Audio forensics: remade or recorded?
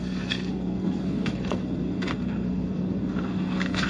remade